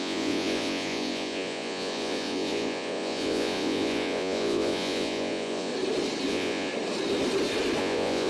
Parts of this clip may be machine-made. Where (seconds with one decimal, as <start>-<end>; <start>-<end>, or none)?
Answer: 0.0-5.7; 6.3-6.7; 7.8-8.3